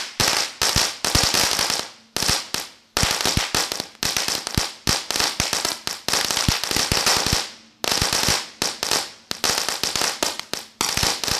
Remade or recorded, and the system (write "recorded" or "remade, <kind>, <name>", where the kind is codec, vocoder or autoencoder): recorded